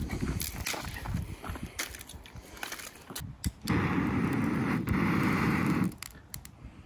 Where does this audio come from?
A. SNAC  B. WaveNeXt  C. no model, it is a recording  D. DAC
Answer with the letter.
C